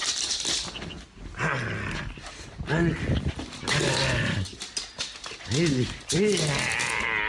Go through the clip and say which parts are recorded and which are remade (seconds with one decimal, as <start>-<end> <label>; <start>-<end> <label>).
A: 0.0-7.3 recorded